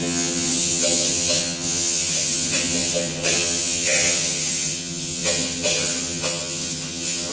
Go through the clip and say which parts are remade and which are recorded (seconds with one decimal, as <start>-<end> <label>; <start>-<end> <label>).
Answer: 0.0-7.3 remade